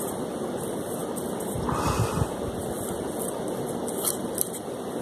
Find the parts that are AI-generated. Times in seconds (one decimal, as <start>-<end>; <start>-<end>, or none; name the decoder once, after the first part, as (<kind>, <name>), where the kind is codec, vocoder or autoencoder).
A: none